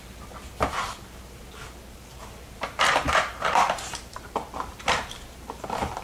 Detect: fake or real fake